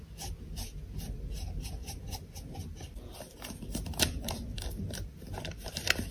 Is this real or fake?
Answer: fake